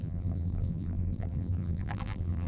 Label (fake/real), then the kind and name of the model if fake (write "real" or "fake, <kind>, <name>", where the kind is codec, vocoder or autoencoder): fake, vocoder, BigVGAN v2